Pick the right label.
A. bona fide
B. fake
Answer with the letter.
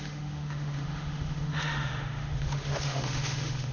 B